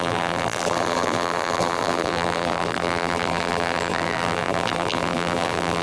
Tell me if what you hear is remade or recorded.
remade